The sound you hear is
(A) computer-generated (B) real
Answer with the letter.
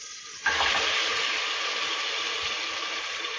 A